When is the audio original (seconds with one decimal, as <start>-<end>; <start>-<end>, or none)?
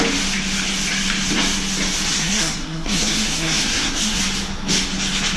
0.0-2.1; 4.2-5.4